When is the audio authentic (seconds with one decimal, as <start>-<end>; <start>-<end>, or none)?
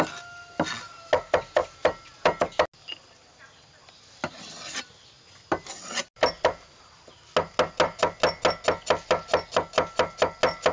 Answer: 0.0-10.7